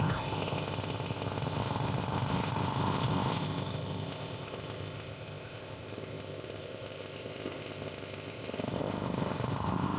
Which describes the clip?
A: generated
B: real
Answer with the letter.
A